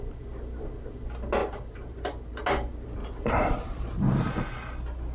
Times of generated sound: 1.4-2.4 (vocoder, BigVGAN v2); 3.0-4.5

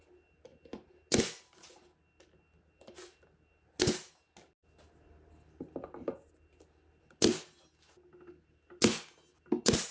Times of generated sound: none

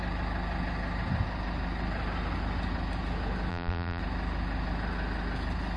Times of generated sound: 3.5-4.0 (vocoder, BigVGAN v2)

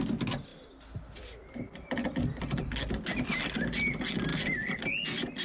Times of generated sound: 0.5-2.4 (vocoder, BigVGAN v2); 4.3-4.8

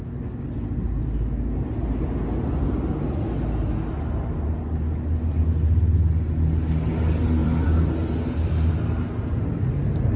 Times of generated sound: 7.4-8.7 (vocoder, BigVGAN v2)

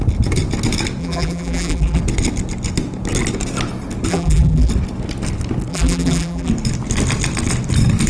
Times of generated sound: 1.0-2.0 (vocoder, BigVGAN v2); 4.1-4.7; 5.7-6.5

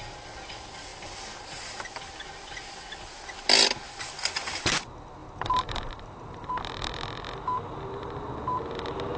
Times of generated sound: 5.2-6.5 (vocoder, BigVGAN v2)